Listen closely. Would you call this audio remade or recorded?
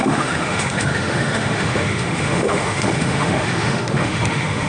remade